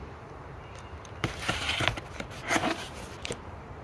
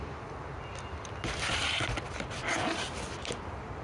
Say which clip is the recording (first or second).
second